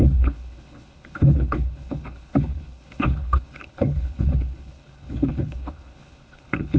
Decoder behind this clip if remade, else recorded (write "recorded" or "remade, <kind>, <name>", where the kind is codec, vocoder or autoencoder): remade, codec, HILCodec